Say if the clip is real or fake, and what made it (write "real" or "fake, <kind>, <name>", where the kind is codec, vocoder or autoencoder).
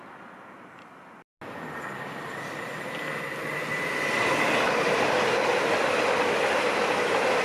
real